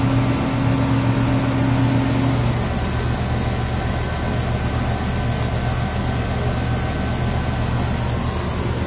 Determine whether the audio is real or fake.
real